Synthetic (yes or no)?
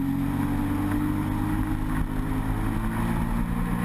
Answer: no